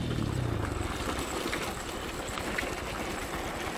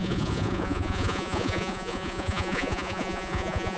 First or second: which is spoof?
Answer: second